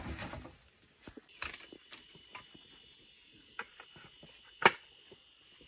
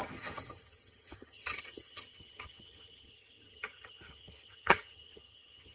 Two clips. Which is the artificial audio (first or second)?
second